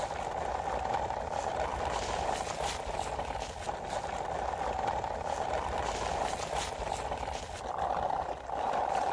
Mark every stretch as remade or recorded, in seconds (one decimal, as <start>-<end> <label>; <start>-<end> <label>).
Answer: 0.0-9.1 recorded